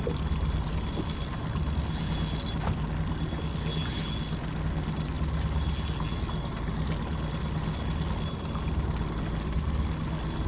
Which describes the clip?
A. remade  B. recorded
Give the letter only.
B